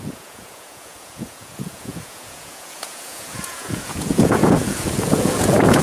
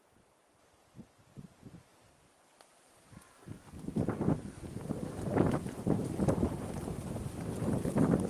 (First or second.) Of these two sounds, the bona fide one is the second